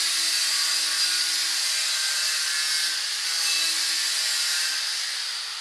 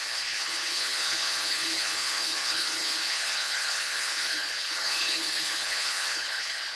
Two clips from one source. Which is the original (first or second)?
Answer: first